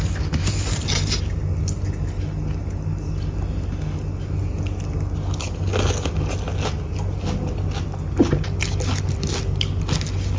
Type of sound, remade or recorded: recorded